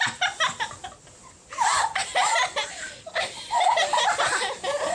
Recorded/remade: recorded